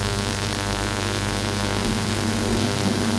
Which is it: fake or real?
fake